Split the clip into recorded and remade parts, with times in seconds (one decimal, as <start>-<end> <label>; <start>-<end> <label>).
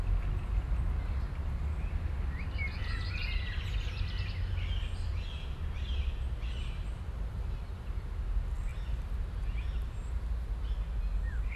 0.0-11.6 recorded